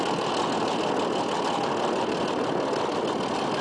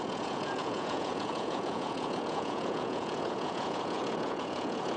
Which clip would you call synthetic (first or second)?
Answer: second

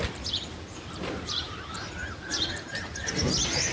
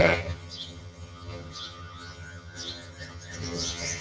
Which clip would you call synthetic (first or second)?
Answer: second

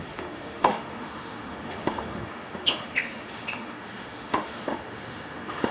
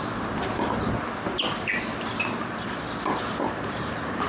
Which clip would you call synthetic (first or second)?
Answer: first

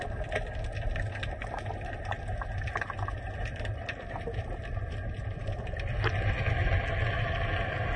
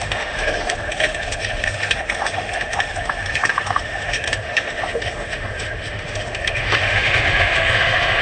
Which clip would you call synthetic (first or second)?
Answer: second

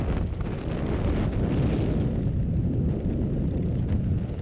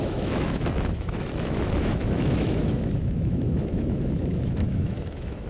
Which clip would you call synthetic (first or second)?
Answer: second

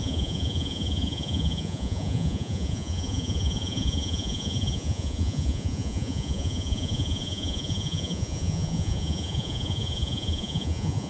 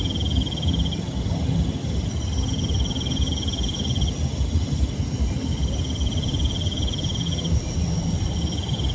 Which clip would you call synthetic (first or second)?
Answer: first